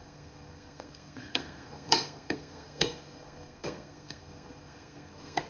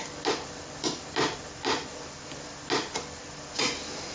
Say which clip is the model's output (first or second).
first